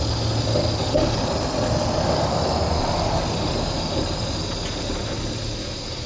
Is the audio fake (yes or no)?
no